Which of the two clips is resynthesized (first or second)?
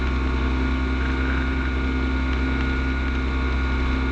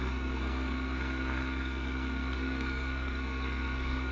second